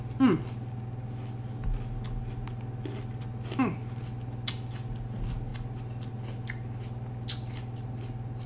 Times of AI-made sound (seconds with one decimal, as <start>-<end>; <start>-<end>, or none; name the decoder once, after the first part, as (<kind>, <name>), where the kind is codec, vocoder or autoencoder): none